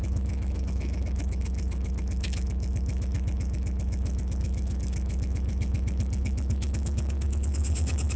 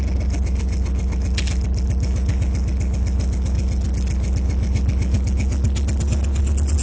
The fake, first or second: first